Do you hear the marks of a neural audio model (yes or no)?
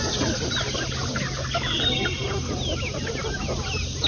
no